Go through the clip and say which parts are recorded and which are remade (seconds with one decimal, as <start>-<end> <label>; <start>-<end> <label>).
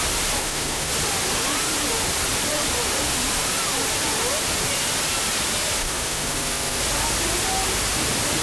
0.0-0.4 recorded; 0.4-0.9 remade; 0.9-5.8 recorded; 5.8-6.8 remade; 6.8-8.4 recorded